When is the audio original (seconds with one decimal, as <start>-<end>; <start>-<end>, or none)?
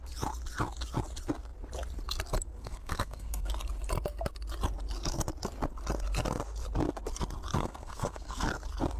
0.0-2.6; 3.5-7.6; 8.5-9.0